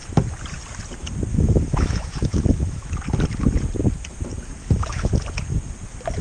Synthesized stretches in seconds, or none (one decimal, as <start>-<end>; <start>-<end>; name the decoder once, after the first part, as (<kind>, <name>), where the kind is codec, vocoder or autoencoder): 1.3-2.9 (autoencoder, DAC-VAE); 4.6-5.1